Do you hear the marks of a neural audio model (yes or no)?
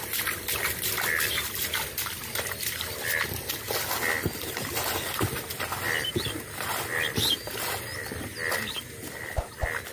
no